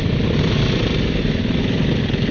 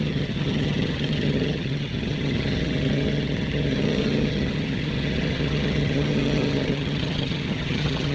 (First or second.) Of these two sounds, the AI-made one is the second